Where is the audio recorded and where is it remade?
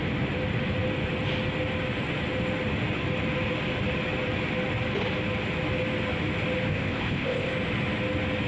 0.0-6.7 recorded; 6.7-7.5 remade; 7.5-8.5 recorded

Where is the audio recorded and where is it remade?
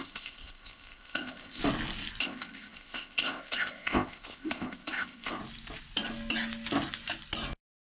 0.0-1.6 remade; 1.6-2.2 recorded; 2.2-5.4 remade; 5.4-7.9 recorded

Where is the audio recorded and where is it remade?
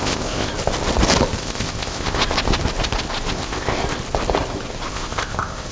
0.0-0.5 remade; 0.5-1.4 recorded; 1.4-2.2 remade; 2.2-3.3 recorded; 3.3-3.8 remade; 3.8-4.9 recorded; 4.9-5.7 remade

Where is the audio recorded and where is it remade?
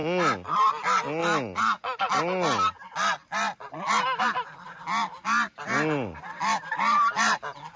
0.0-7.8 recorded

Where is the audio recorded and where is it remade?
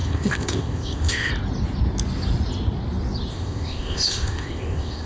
0.0-1.3 remade; 1.3-3.3 recorded; 3.3-5.1 remade